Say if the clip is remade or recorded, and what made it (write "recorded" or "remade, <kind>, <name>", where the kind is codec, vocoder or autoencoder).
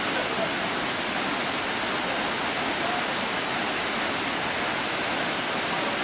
recorded